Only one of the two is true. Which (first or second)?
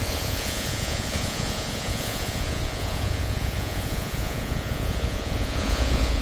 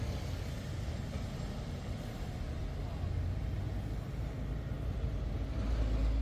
second